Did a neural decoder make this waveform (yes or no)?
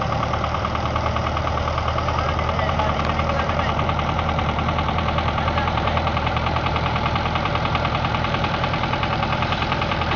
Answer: yes